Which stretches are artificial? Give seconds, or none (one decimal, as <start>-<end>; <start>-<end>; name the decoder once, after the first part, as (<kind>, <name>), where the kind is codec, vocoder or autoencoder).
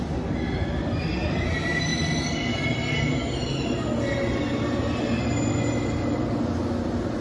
none